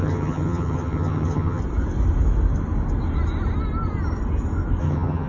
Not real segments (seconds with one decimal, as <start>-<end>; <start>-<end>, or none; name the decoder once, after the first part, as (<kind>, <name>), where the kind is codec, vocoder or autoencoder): 0.0-1.6 (vocoder, HiFi-GAN); 4.8-5.3